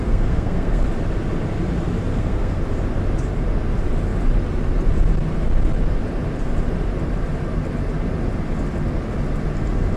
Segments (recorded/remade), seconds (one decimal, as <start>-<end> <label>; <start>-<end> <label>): 0.0-0.8 remade; 0.8-2.1 recorded; 2.1-2.6 remade; 2.6-10.0 recorded